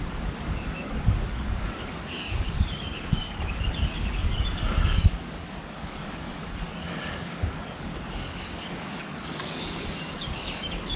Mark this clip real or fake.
fake